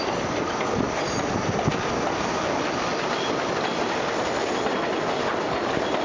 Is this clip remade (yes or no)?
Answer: no